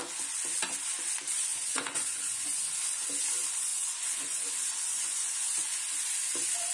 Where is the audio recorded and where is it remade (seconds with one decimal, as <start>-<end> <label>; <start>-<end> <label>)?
0.0-1.5 recorded; 1.5-2.6 remade; 2.6-3.7 recorded; 3.7-4.4 remade; 4.4-4.9 recorded; 4.9-5.8 remade; 5.8-6.7 recorded